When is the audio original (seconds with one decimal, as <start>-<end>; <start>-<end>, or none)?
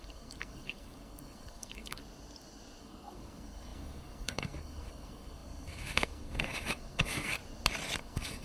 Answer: 2.0-2.8; 7.4-8.0